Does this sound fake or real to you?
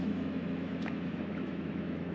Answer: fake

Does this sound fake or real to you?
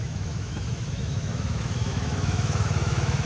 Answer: fake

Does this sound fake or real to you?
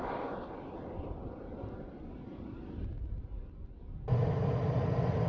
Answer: real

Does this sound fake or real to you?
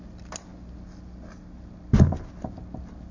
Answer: real